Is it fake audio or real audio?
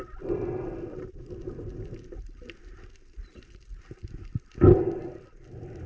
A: real